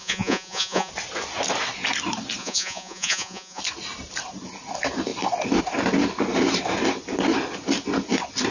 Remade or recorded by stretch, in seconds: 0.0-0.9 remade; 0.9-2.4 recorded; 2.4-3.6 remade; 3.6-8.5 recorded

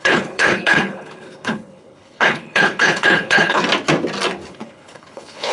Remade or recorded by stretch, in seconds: 0.0-3.6 remade; 3.6-4.5 recorded; 4.5-5.5 remade

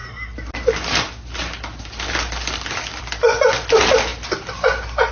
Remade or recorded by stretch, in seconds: 0.0-5.1 recorded

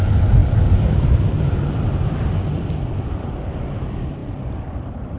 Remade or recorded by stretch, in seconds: 0.0-0.4 recorded; 0.4-3.5 remade; 3.5-4.2 recorded; 4.2-5.2 remade

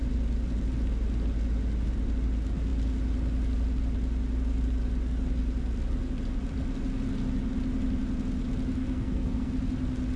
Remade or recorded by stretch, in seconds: 0.0-8.8 recorded; 8.8-9.5 remade; 9.5-10.2 recorded

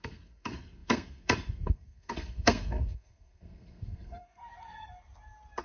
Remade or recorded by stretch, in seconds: 0.0-4.4 remade; 4.4-5.6 recorded

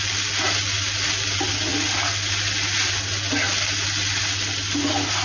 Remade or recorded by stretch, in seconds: 0.0-5.2 recorded

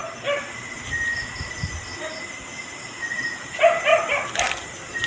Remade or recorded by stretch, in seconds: 0.0-3.9 recorded; 3.9-5.1 remade